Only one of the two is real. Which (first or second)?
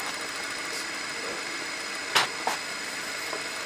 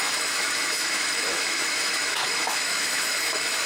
first